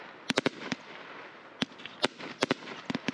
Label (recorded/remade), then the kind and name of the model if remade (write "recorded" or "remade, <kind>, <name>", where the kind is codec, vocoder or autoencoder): recorded